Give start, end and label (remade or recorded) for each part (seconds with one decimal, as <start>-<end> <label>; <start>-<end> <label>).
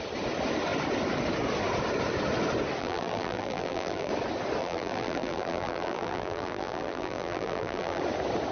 0.0-2.8 recorded; 2.8-4.1 remade; 4.1-4.6 recorded; 4.6-8.0 remade; 8.0-8.5 recorded